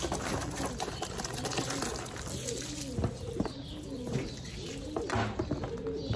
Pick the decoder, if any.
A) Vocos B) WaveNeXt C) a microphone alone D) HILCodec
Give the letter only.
C